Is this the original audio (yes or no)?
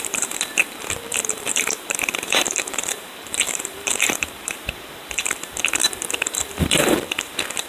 no